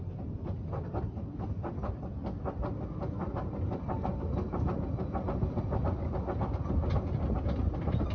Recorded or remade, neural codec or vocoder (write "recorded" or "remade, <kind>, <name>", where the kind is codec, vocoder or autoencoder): recorded